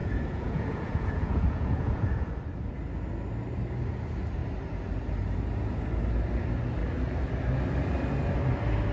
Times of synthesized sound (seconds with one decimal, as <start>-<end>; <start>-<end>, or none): 0.0-2.4